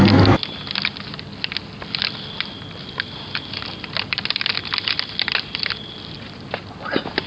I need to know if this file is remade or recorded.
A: recorded